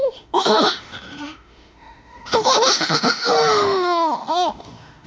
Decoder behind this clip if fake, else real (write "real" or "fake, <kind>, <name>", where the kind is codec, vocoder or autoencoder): fake, autoencoder, DAC-VAE